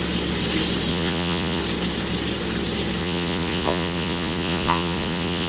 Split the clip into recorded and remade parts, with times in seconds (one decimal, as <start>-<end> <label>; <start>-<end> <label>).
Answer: 0.0-0.9 recorded; 0.9-1.6 remade; 1.6-3.0 recorded; 3.0-5.5 remade